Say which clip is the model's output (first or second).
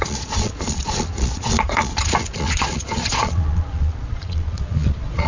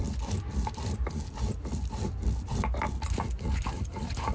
first